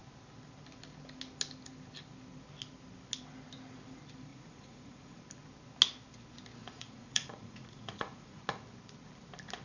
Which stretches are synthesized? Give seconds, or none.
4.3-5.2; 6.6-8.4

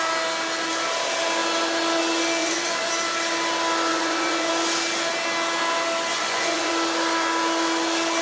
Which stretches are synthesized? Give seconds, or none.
2.4-2.9; 3.9-4.5; 6.1-6.7

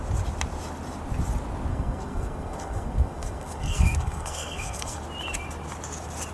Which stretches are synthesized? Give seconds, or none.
1.7-5.0

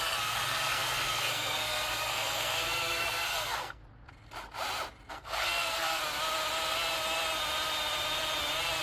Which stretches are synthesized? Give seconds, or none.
0.0-3.8; 5.1-6.0

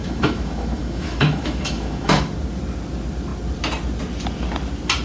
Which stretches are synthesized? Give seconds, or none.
0.0-2.1

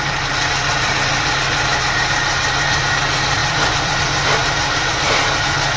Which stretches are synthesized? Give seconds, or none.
3.4-3.9; 4.4-4.9

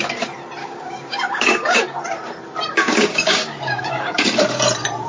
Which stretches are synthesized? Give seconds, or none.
0.6-1.8; 2.7-4.3